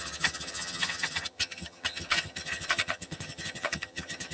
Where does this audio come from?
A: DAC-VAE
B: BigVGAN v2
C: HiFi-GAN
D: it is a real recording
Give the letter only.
C